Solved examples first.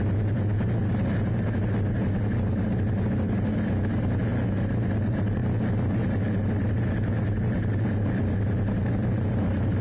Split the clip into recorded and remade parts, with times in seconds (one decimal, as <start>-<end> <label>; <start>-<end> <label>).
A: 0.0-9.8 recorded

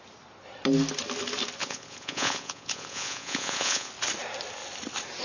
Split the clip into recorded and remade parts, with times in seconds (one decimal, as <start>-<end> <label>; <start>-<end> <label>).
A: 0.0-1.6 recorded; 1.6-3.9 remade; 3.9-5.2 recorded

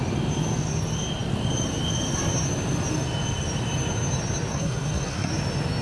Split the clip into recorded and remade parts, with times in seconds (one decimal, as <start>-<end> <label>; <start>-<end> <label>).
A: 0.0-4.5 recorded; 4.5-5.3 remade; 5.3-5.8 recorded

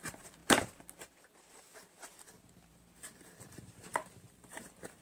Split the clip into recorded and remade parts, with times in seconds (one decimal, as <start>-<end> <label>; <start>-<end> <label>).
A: 0.0-0.4 remade; 0.4-3.0 recorded; 3.0-5.0 remade

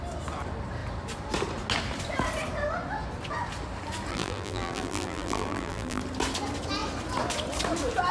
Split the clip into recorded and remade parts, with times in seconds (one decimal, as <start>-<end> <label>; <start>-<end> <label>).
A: 0.0-4.1 recorded; 4.1-6.0 remade; 6.0-8.1 recorded

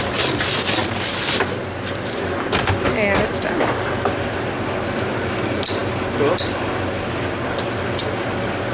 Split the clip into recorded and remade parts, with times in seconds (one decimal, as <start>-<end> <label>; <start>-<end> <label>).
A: 0.0-8.7 recorded